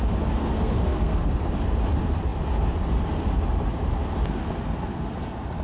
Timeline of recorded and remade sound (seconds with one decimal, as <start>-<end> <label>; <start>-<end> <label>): 0.0-0.4 recorded; 0.4-1.5 remade; 1.5-5.6 recorded